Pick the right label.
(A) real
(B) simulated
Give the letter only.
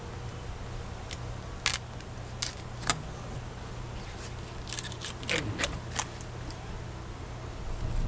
A